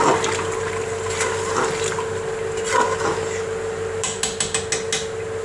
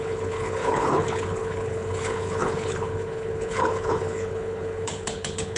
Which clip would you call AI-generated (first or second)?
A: second